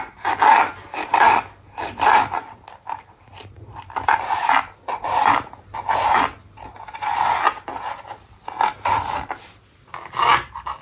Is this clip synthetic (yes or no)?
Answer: no